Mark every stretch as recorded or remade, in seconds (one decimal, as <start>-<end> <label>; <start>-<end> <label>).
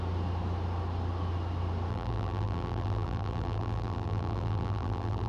0.0-1.9 recorded; 1.9-5.3 remade